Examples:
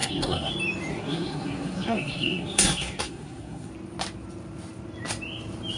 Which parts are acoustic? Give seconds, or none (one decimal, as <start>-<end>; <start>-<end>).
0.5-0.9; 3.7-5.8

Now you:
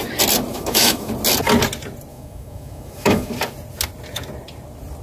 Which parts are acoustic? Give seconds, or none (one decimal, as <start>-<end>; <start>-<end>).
0.0-0.5; 1.1-2.1; 3.3-5.0

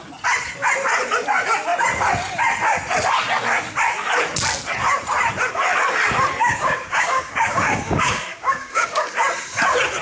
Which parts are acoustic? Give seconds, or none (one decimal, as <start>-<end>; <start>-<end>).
0.0-6.4; 9.1-10.0

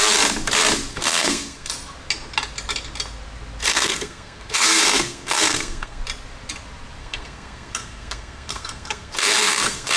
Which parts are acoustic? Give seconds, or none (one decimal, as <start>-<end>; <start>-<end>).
0.0-0.9; 1.7-3.7; 6.0-7.0